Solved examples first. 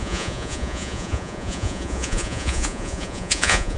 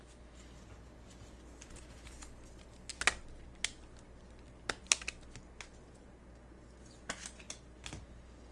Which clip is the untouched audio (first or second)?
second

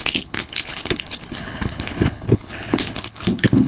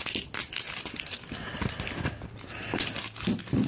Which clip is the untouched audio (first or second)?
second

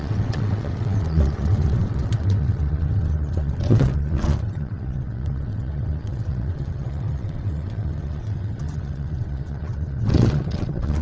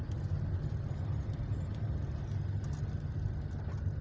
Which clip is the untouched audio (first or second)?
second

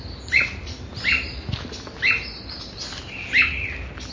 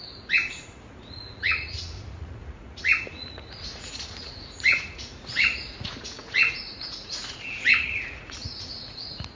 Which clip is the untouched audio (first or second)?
first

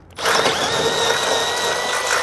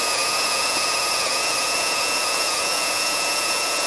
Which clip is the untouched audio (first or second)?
first